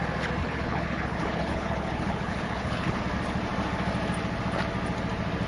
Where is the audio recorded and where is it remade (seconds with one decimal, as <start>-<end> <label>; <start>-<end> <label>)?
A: 0.0-0.4 recorded; 0.4-3.0 remade; 3.0-5.5 recorded